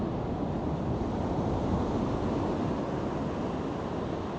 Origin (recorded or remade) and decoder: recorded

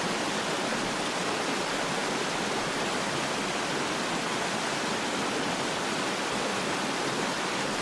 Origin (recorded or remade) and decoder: recorded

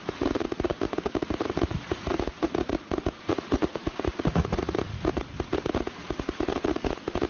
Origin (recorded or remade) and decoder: remade, vocoder, Vocos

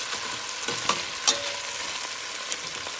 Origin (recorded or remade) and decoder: recorded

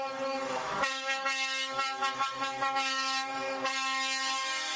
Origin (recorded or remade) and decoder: remade, autoencoder, DAC-VAE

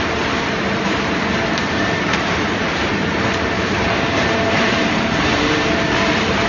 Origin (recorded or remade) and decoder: remade, vocoder, BigVGAN v2